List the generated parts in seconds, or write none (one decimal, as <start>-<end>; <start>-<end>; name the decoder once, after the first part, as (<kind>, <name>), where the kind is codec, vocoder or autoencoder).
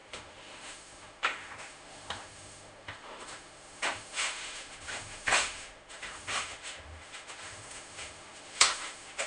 0.0-9.3 (autoencoder, DAC-VAE)